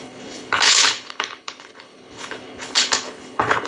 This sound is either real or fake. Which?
fake